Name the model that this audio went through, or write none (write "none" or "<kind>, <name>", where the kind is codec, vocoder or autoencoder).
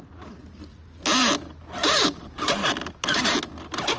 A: none